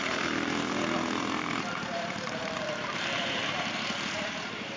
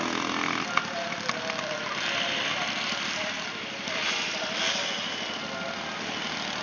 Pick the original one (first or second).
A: second